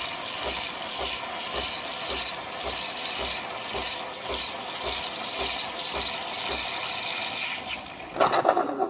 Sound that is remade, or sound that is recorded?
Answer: recorded